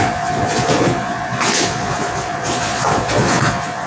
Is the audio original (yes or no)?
no